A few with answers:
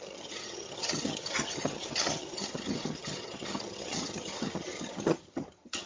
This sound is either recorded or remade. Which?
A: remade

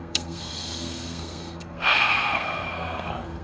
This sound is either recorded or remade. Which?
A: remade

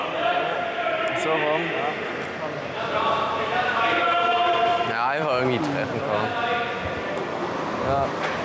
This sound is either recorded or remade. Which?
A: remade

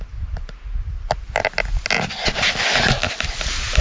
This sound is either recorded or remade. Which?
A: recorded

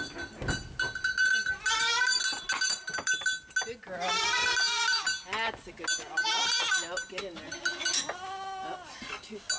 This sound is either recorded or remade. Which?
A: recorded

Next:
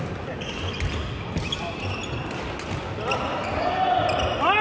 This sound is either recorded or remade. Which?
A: recorded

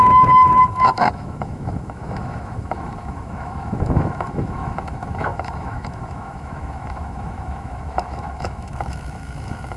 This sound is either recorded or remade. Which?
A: remade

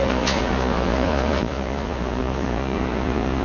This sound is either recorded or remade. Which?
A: remade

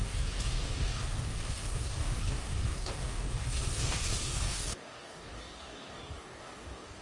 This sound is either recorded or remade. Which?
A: remade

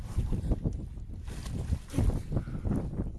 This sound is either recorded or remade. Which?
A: recorded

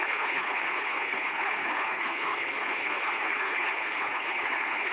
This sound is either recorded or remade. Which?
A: remade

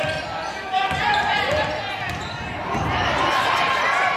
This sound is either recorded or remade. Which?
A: recorded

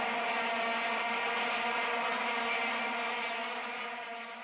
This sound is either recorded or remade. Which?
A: recorded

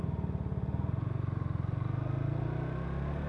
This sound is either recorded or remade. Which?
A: recorded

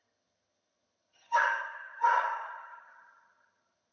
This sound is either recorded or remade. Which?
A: remade